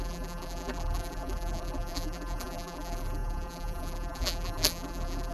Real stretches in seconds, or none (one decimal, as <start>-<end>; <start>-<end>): none